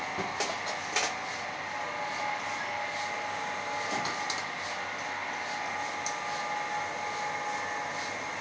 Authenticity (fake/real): real